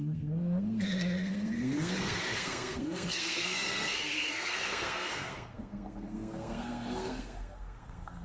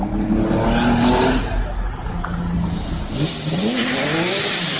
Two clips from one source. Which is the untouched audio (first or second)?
second